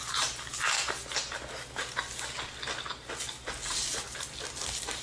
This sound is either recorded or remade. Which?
recorded